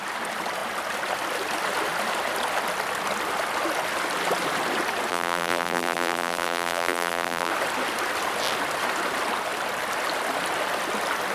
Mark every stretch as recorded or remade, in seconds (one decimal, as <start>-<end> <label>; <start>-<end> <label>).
0.0-5.1 recorded; 5.1-7.5 remade; 7.5-11.3 recorded